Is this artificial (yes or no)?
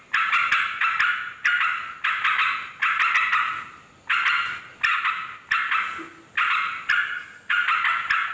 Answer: no